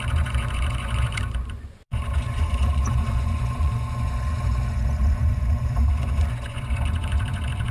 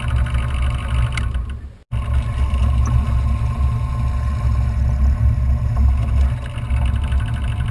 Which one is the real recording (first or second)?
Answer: second